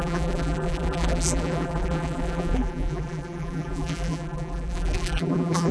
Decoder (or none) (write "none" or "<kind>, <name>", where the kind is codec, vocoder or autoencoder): vocoder, BigVGAN v2